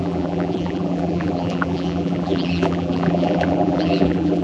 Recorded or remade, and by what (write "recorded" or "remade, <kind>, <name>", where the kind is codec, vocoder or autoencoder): remade, vocoder, BigVGAN v2